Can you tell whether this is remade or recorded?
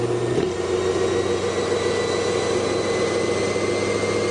recorded